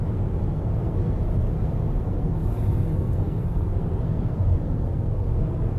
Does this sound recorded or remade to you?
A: remade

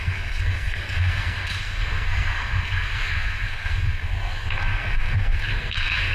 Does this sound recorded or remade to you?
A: remade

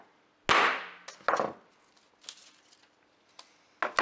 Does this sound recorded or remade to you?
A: recorded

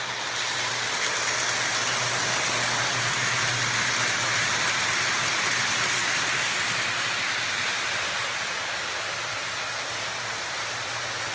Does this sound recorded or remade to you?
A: recorded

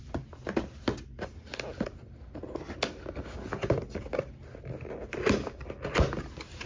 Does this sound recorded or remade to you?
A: recorded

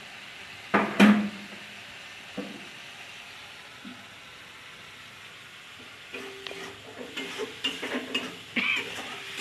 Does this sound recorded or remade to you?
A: recorded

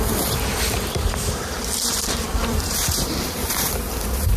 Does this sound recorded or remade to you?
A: remade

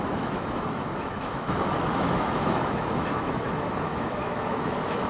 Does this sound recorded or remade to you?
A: remade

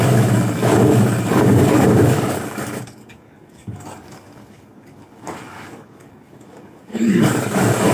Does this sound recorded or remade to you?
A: remade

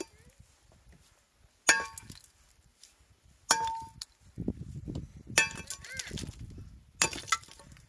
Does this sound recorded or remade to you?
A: recorded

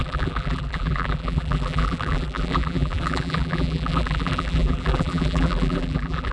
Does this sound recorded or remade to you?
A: remade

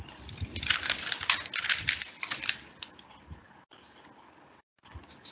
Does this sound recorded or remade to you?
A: recorded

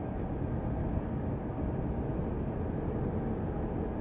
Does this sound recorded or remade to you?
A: recorded